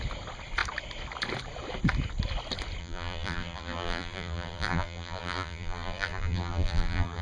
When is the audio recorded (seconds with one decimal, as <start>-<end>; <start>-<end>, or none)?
0.0-2.8